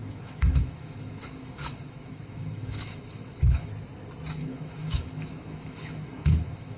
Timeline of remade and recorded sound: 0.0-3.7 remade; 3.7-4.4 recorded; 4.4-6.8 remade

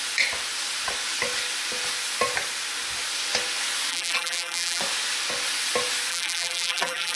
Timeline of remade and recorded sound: 0.0-3.9 recorded; 3.9-4.8 remade; 4.8-6.1 recorded; 6.1-7.2 remade

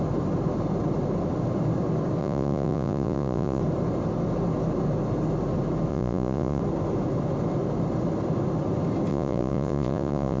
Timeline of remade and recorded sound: 0.0-2.2 recorded; 2.2-3.6 remade; 3.6-5.9 recorded; 5.9-6.6 remade; 6.6-9.1 recorded; 9.1-10.4 remade

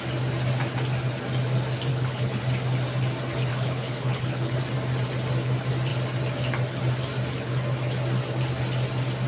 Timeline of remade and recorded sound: 0.0-1.9 recorded; 1.9-2.4 remade; 2.4-3.5 recorded; 3.5-4.6 remade; 4.6-9.3 recorded

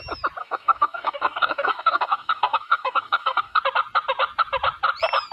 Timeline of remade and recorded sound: 0.0-0.4 recorded; 0.4-3.6 remade; 3.6-5.3 recorded

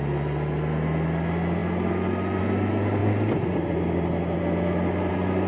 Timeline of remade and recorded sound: 0.0-5.5 recorded